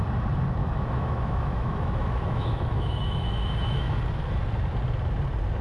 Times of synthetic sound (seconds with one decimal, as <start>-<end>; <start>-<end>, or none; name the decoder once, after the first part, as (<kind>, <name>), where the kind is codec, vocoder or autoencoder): 0.6-4.0 (autoencoder, DAC-VAE)